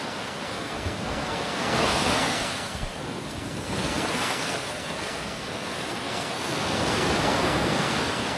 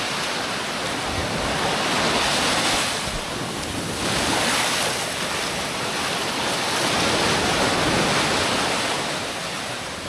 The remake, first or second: first